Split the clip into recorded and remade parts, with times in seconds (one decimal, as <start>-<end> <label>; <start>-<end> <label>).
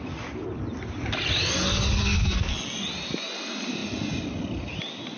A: 0.0-2.0 recorded; 2.0-2.5 remade; 2.5-5.2 recorded